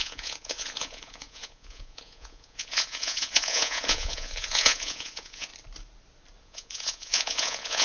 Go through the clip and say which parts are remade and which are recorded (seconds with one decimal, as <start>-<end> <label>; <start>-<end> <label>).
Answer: 0.0-5.5 remade; 5.5-6.4 recorded; 6.4-7.8 remade